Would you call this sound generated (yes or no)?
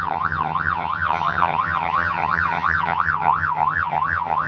yes